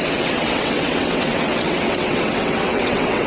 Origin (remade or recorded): remade